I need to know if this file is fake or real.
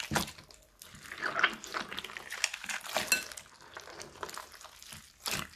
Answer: real